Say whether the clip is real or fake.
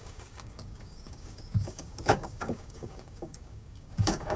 fake